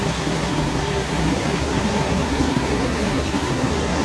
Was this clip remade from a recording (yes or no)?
yes